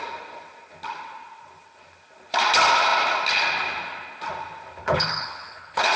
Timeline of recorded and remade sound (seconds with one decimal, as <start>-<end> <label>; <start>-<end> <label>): 0.0-4.8 recorded; 4.8-6.0 remade